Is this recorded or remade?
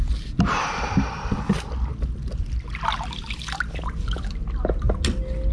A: recorded